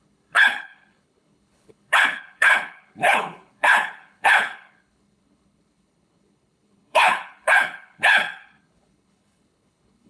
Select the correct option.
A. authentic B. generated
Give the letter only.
B